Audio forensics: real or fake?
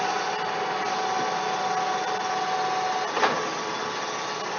real